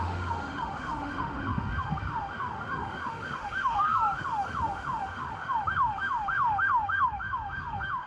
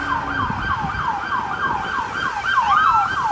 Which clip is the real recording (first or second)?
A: second